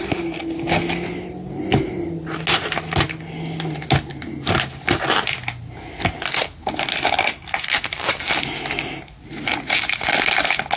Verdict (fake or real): real